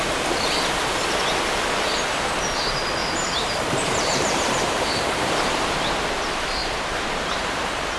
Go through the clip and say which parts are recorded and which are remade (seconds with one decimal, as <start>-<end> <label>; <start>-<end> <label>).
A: 0.0-3.0 recorded; 3.0-5.9 remade; 5.9-6.6 recorded; 6.6-7.6 remade; 7.6-8.0 recorded

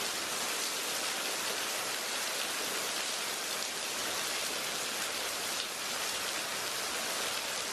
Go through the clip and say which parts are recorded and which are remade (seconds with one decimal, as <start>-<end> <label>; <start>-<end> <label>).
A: 0.0-4.0 remade; 4.0-5.9 recorded; 5.9-6.5 remade; 6.5-7.7 recorded

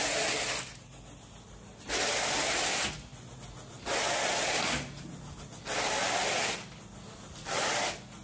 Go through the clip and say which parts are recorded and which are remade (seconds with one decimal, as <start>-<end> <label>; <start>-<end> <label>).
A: 0.0-8.2 recorded

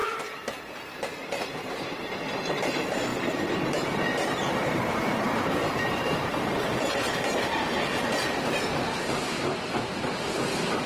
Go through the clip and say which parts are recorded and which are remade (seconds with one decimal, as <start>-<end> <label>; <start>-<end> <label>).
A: 0.0-0.6 recorded; 0.6-6.3 remade; 6.3-10.2 recorded; 10.2-10.9 remade

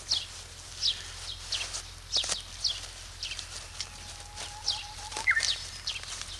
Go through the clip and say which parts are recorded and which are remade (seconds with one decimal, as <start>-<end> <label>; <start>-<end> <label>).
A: 0.0-4.6 recorded; 4.6-5.7 remade; 5.7-6.4 recorded

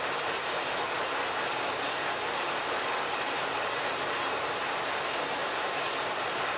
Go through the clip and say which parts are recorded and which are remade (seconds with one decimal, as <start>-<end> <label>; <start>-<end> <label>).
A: 0.0-5.4 remade; 5.4-6.0 recorded; 6.0-6.6 remade

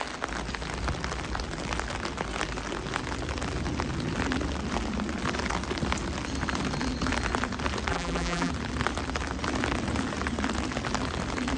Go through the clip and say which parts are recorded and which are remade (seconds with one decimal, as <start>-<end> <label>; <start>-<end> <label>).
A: 0.0-7.9 recorded; 7.9-8.5 remade; 8.5-11.6 recorded

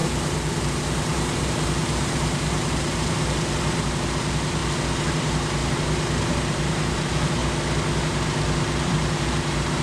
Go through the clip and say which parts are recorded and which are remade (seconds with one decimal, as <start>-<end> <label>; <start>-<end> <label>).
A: 0.0-4.6 remade; 4.6-5.1 recorded; 5.1-5.6 remade; 5.6-6.3 recorded; 6.3-7.4 remade; 7.4-8.0 recorded; 8.0-9.8 remade